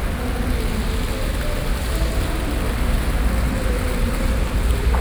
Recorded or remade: recorded